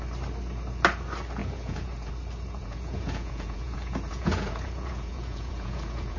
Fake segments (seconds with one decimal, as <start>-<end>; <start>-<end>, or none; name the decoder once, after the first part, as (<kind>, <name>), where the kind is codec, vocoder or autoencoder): 1.4-2.1 (vocoder, Vocos); 2.6-6.2